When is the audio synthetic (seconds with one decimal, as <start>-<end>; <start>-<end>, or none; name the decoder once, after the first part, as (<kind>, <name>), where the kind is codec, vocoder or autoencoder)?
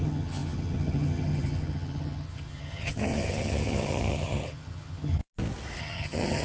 0.0-5.2 (vocoder, HiFi-GAN); 5.8-6.4